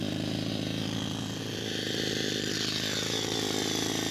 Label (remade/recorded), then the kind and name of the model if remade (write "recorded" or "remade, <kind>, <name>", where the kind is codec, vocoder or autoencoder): recorded